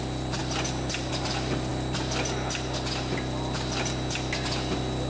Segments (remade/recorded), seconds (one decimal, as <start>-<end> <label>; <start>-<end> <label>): 0.0-5.1 recorded